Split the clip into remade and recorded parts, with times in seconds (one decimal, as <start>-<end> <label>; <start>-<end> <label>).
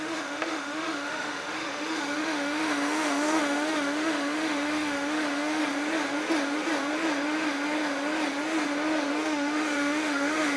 0.0-5.6 remade; 5.6-9.1 recorded; 9.1-10.6 remade